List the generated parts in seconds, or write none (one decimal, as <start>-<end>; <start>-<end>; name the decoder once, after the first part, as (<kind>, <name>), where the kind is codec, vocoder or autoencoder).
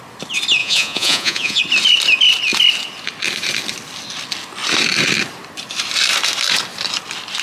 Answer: 0.6-1.6 (vocoder, Vocos)